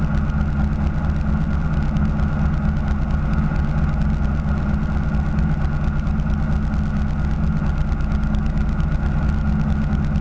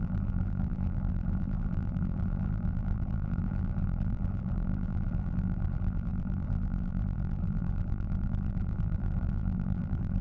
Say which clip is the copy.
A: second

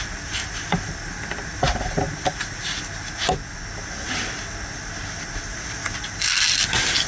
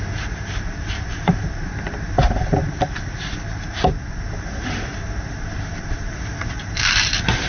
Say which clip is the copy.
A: second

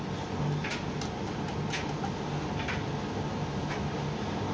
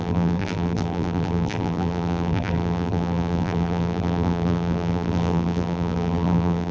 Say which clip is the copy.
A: second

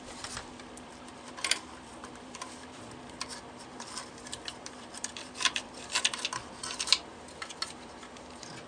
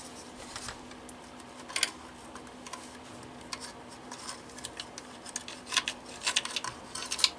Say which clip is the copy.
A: first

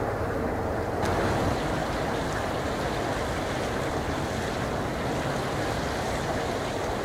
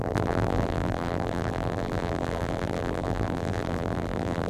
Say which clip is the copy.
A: second